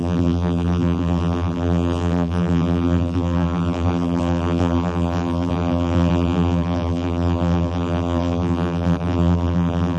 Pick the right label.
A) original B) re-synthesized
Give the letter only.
B